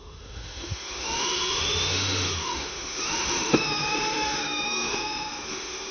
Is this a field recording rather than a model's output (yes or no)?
no